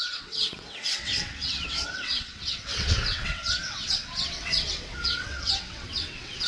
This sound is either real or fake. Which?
fake